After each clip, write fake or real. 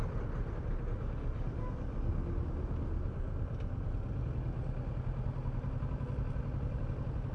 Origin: real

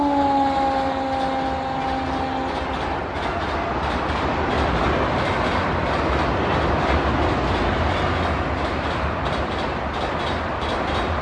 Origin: real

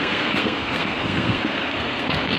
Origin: fake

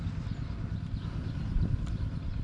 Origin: real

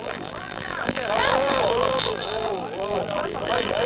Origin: fake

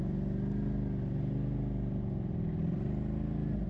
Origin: real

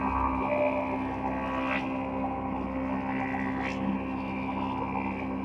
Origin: real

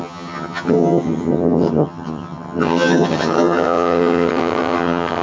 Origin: fake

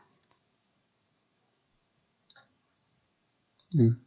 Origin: fake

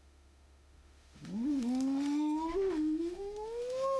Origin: fake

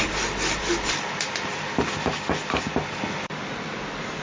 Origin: real